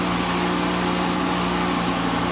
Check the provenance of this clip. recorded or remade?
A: recorded